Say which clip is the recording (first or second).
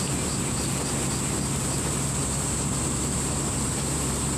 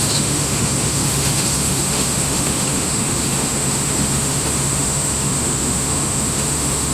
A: first